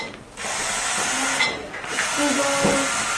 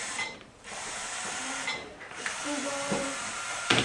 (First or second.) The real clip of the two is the first